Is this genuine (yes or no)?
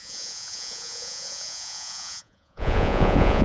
no